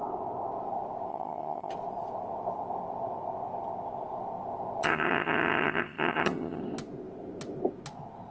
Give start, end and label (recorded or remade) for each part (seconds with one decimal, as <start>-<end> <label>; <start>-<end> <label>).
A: 0.0-1.1 recorded; 1.1-1.7 remade; 1.7-4.8 recorded; 4.8-6.6 remade; 6.6-8.3 recorded